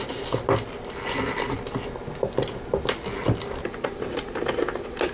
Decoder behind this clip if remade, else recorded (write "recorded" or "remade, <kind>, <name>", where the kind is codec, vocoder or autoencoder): recorded